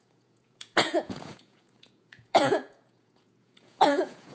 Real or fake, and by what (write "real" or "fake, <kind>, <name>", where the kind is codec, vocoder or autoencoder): fake, vocoder, Vocos